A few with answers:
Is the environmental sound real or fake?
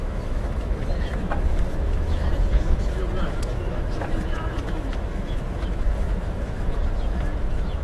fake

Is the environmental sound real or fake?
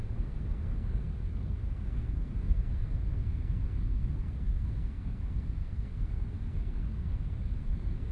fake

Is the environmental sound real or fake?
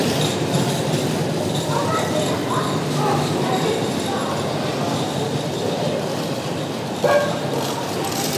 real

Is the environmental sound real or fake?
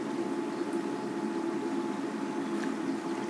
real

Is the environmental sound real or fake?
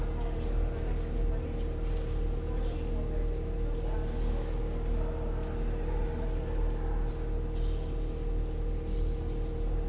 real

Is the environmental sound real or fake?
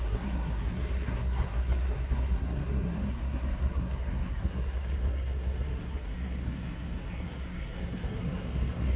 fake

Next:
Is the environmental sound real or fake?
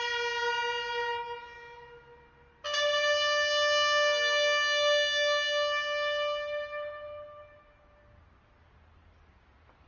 real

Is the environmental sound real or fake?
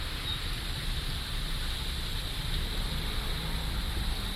fake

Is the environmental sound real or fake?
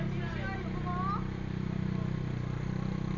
real